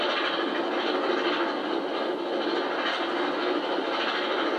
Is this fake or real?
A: real